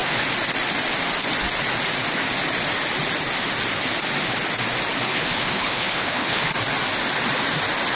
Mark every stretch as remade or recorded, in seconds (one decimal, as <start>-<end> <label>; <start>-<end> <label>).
0.0-5.1 recorded; 5.1-6.5 remade; 6.5-8.0 recorded